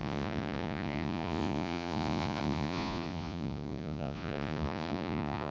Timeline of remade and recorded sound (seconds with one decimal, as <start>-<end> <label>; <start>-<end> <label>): 0.0-5.5 remade